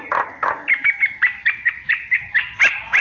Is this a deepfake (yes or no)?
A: no